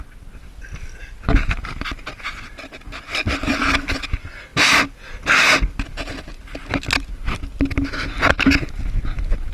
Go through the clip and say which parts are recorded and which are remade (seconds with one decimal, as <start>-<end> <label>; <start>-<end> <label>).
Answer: 0.0-9.5 recorded